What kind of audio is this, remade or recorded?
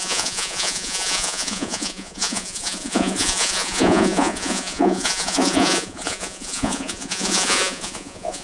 remade